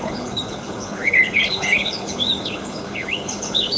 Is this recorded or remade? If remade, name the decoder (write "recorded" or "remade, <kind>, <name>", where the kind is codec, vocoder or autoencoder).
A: remade, codec, HILCodec